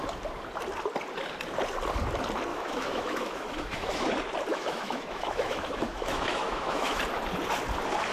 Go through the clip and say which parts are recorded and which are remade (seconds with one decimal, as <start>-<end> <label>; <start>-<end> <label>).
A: 0.0-2.5 recorded; 2.5-4.1 remade; 4.1-4.5 recorded; 4.5-7.0 remade; 7.0-8.1 recorded